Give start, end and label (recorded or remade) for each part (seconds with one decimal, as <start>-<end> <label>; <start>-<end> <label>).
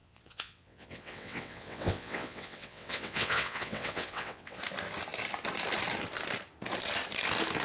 0.0-4.6 remade; 4.6-7.6 recorded